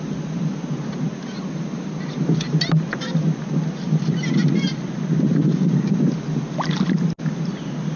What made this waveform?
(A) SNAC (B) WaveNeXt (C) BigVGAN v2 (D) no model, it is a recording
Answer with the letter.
D